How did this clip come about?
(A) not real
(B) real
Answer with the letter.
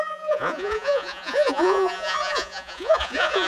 A